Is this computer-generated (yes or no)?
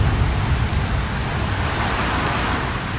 no